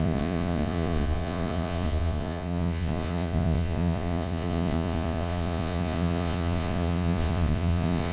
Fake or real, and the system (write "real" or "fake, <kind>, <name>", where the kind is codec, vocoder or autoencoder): fake, vocoder, Vocos